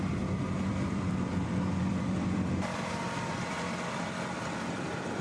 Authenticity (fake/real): fake